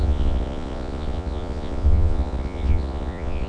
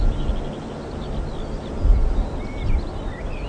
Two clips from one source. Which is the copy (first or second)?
first